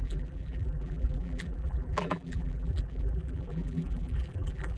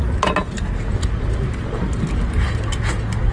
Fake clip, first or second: first